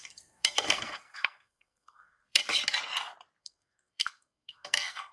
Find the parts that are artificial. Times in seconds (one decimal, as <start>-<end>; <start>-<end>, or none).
0.0-2.4; 3.4-5.1